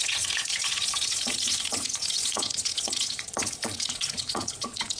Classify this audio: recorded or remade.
remade